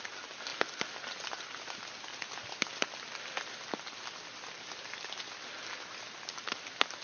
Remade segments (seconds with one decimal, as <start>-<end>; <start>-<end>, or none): none